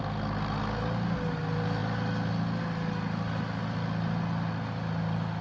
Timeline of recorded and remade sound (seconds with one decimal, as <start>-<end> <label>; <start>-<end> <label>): 0.0-5.4 recorded